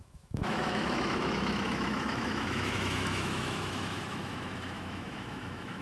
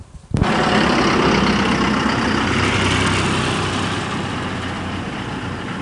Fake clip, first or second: first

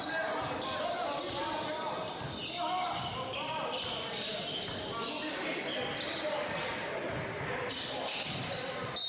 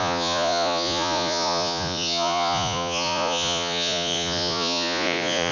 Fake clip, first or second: second